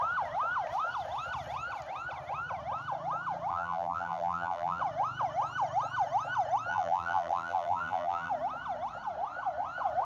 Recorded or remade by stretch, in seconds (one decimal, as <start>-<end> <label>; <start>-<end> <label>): 0.0-3.5 recorded; 3.5-4.8 remade; 4.8-6.7 recorded; 6.7-8.3 remade; 8.3-10.0 recorded